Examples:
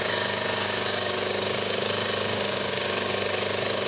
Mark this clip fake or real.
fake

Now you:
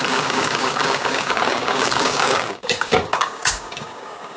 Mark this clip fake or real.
fake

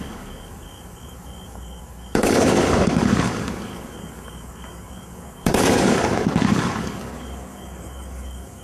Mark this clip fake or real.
fake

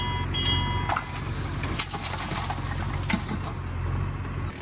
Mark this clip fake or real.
real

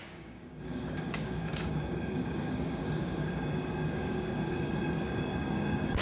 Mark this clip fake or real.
fake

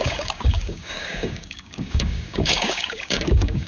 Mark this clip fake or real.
fake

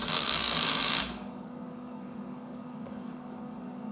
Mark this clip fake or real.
fake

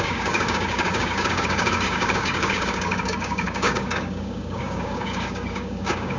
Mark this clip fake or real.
fake